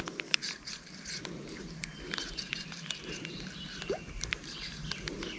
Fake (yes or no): yes